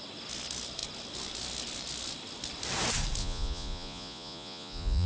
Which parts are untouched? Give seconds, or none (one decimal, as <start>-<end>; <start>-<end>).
0.0-3.2